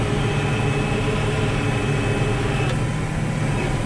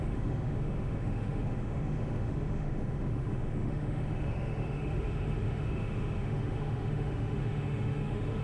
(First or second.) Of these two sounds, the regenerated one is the second